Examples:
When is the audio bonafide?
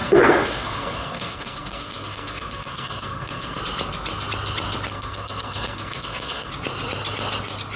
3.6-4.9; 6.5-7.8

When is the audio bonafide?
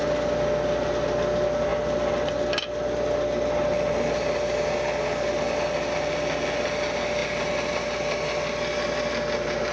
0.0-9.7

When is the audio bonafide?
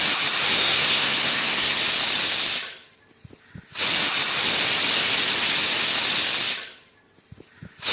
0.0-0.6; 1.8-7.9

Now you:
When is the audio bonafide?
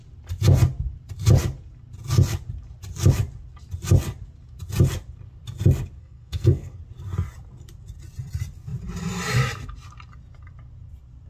0.0-6.0; 6.8-11.3